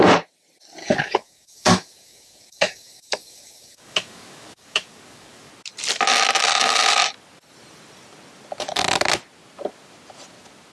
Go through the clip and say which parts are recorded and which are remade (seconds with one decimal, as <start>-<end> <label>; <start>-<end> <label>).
0.0-0.8 recorded; 0.8-5.5 remade; 5.5-10.7 recorded